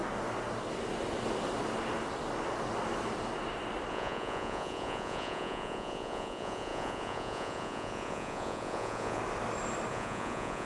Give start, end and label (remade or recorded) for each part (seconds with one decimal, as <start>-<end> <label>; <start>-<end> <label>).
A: 0.0-3.9 recorded; 3.9-9.2 remade; 9.2-9.9 recorded; 9.9-10.7 remade